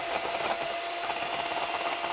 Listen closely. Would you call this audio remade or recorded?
recorded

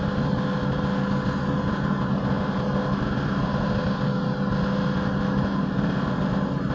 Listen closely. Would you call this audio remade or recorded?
recorded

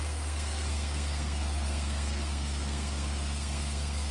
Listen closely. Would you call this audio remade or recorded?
remade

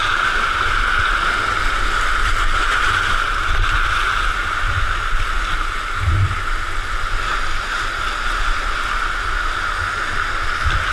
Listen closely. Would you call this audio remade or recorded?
recorded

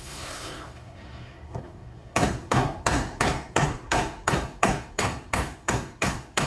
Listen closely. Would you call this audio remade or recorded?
remade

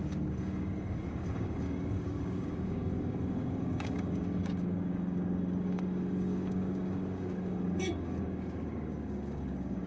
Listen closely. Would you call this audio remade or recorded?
remade